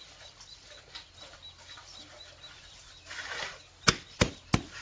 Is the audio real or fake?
real